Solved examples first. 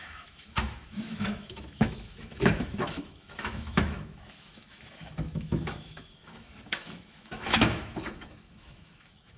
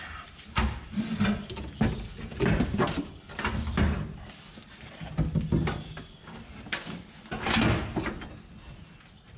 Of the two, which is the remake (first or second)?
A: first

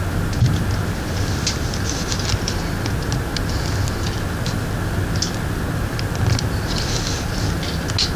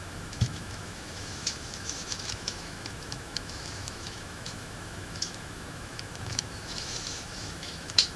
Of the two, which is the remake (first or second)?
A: second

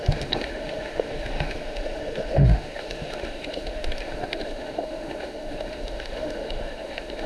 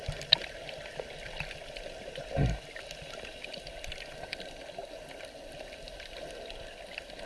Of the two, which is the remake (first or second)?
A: first